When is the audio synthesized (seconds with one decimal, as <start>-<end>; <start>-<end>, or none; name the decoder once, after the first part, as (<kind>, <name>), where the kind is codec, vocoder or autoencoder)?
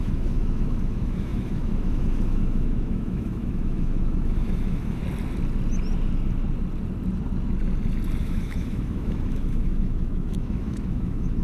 0.0-5.0 (autoencoder, DAC-VAE); 8.2-11.4